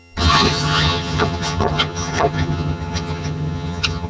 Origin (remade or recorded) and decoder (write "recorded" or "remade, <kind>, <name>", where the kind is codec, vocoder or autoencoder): remade, vocoder, HiFi-GAN